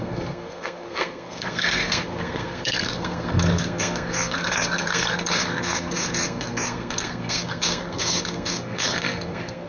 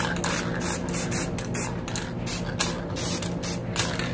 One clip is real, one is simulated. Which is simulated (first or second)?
first